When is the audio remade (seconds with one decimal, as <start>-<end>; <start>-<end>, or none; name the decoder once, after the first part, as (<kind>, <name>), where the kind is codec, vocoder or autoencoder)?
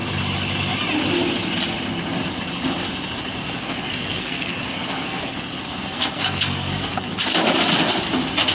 3.4-7.2 (codec, SNAC)